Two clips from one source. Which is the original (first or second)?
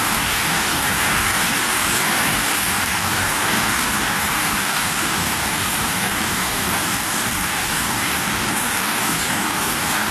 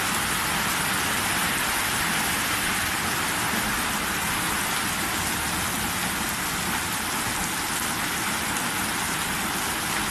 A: second